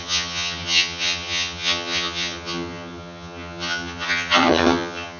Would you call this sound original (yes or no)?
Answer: no